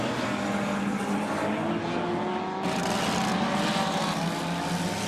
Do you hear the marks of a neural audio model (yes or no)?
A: no